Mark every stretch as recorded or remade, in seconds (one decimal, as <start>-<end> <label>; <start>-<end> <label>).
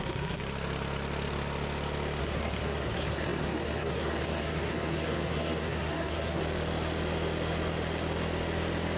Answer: 0.0-0.4 remade; 0.4-2.2 recorded; 2.2-6.4 remade; 6.4-9.0 recorded